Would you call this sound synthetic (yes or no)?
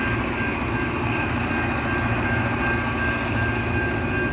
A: no